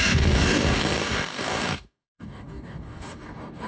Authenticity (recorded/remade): remade